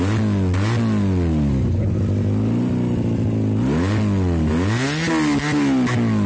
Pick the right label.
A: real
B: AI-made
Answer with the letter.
A